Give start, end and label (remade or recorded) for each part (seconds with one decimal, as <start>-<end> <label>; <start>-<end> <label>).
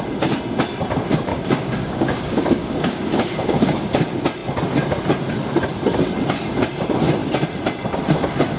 0.0-1.3 recorded; 1.3-4.0 remade; 4.0-8.6 recorded